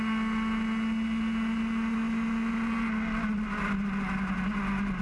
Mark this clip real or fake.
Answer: real